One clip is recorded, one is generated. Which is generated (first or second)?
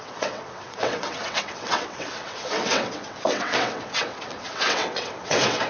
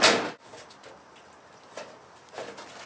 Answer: first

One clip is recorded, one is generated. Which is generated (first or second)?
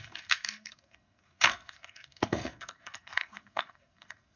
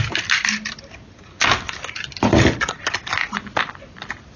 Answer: first